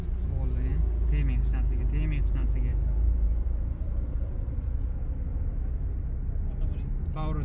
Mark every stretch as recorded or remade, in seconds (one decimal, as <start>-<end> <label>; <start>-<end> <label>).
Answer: 0.0-2.7 recorded; 2.7-4.9 remade; 4.9-7.4 recorded